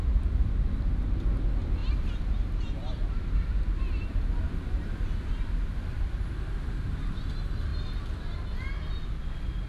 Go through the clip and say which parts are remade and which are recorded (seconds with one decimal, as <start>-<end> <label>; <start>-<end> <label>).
0.0-1.8 recorded; 1.8-4.3 remade; 4.3-9.7 recorded